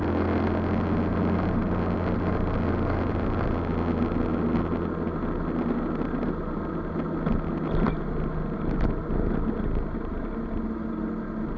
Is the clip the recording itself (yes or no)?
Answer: yes